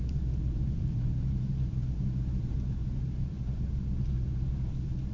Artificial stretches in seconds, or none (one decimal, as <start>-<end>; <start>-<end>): 0.0-5.1